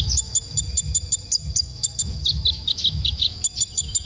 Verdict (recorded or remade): remade